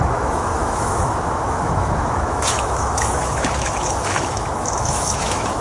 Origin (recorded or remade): remade